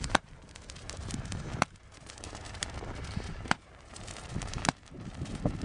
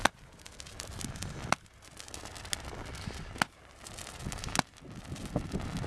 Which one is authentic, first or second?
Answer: second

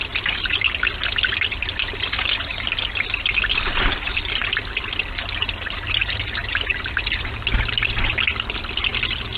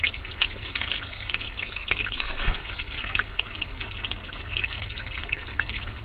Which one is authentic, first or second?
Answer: first